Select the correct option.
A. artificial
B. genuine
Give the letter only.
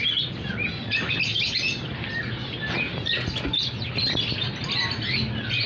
B